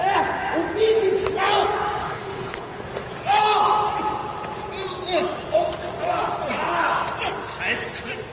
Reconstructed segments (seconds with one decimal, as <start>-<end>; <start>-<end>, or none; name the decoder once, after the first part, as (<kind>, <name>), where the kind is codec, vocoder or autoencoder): 2.0-2.8 (codec, HILCodec)